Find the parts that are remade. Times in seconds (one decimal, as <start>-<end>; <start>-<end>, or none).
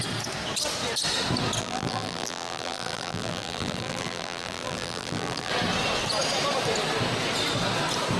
1.6-5.5